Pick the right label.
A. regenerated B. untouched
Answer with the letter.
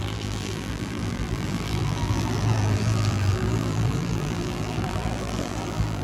A